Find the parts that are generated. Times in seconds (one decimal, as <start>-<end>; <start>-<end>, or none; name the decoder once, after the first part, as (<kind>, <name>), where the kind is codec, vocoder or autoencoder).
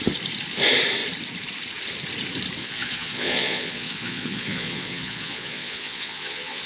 2.6-6.7 (vocoder, Vocos)